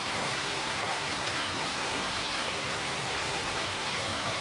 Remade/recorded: remade